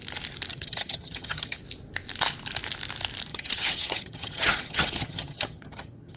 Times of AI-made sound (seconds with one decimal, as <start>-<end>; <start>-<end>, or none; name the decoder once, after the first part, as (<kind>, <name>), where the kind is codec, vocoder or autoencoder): 0.5-1.6 (vocoder, HiFi-GAN); 3.3-6.2